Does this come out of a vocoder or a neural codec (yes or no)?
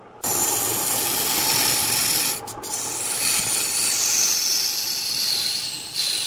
no